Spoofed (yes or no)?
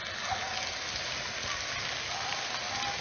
no